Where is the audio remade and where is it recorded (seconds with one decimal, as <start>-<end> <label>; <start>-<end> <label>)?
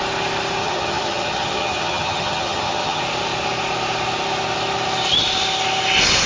0.0-0.6 recorded; 0.6-3.0 remade; 3.0-6.3 recorded